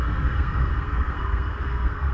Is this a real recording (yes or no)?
no